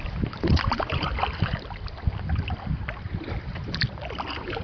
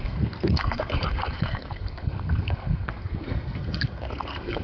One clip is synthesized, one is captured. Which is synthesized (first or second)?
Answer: second